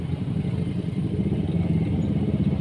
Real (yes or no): yes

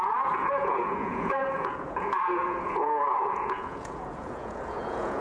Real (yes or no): no